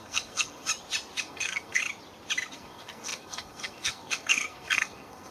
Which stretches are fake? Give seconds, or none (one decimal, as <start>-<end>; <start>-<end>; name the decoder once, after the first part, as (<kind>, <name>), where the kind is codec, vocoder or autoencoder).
0.0-0.7 (codec, SNAC); 1.2-1.8; 2.5-5.3